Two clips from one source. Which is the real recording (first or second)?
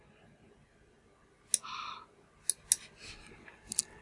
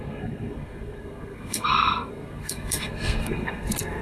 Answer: first